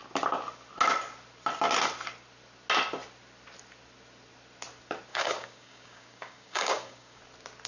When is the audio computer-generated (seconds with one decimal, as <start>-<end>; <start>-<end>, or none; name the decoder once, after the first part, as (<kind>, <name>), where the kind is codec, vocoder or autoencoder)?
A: 5.1-7.2 (codec, DAC)